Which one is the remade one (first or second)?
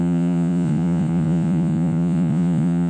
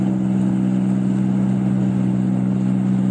first